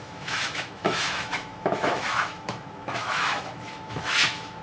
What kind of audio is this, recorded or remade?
remade